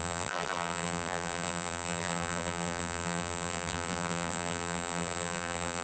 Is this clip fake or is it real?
fake